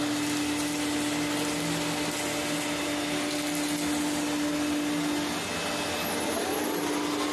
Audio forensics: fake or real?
real